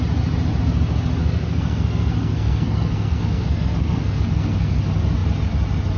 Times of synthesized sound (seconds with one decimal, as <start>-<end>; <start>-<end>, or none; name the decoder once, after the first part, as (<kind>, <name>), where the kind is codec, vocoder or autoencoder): 1.2-4.8 (codec, SNAC)